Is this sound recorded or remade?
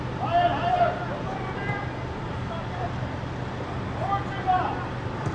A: recorded